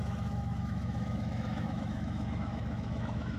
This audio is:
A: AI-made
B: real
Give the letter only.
A